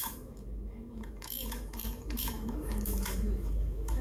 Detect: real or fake fake